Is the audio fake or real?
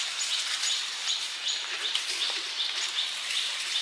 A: real